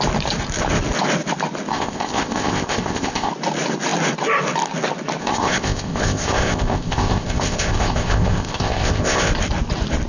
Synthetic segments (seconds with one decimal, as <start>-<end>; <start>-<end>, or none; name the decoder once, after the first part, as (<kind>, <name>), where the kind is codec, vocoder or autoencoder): 1.7-3.3 (codec, ZipCodec); 5.2-9.3